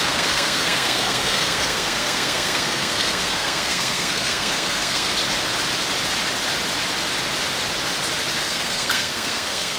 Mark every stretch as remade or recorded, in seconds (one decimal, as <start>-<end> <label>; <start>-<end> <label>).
0.0-5.1 remade; 5.1-8.4 recorded; 8.4-9.8 remade